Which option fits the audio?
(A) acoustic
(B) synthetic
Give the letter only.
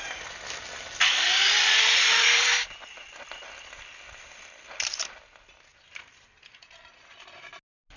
A